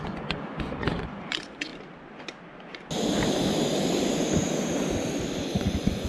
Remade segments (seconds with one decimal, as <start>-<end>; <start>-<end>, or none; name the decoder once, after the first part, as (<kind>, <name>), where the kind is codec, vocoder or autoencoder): 0.0-1.7 (vocoder, Vocos); 5.4-6.1